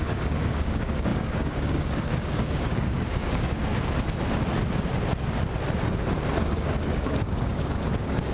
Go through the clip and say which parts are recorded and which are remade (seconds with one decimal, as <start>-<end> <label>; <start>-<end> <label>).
0.0-3.7 remade; 3.7-6.4 recorded; 6.4-8.3 remade